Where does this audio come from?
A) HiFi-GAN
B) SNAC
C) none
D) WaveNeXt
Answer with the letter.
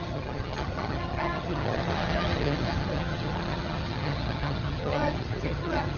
A